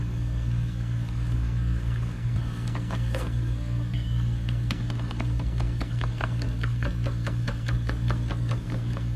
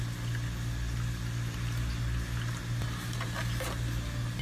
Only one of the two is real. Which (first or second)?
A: second